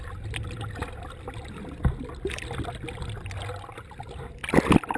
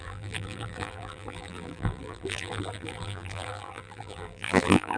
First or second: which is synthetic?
second